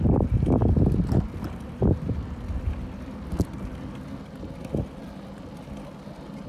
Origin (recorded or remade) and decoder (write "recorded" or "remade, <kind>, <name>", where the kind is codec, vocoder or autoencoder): recorded